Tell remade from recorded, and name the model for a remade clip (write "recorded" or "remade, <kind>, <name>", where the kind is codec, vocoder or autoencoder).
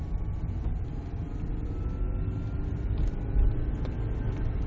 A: recorded